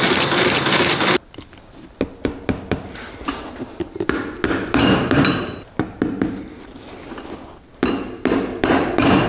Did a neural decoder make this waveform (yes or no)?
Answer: no